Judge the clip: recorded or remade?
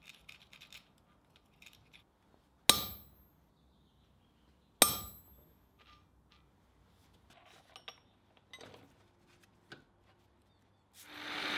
recorded